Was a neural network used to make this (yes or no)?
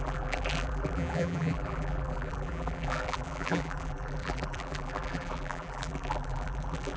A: yes